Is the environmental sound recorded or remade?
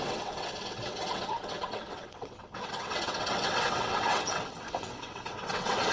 remade